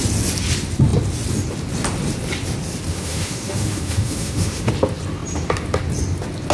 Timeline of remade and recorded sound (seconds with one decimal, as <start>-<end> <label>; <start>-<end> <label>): 0.0-2.9 recorded; 2.9-4.7 remade; 4.7-6.5 recorded